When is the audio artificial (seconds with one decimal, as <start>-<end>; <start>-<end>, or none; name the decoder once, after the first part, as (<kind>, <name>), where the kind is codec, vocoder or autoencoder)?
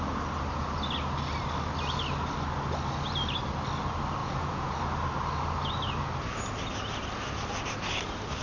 4.2-4.8 (vocoder, Vocos)